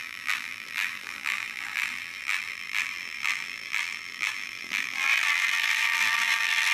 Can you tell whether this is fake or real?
fake